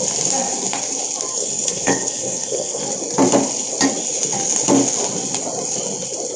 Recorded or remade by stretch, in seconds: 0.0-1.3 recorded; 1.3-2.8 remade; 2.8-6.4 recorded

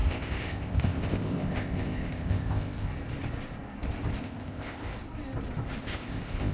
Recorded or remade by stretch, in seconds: 0.0-2.9 remade; 2.9-4.2 recorded; 4.2-4.9 remade; 4.9-5.8 recorded; 5.8-6.5 remade

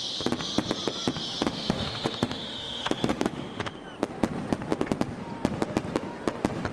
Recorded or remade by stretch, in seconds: 0.0-1.4 recorded; 1.4-3.7 remade; 3.7-6.7 recorded

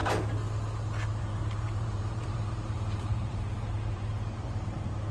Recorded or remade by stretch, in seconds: 0.0-1.2 recorded; 1.2-5.1 remade